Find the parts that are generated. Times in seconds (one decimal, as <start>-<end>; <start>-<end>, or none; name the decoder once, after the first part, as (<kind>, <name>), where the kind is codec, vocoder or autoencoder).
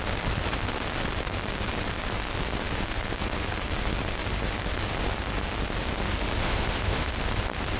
6.4-7.1 (autoencoder, DAC-VAE)